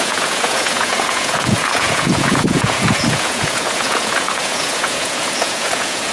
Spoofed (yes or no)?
yes